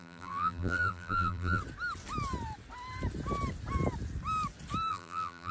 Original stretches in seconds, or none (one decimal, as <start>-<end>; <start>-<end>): 1.6-4.9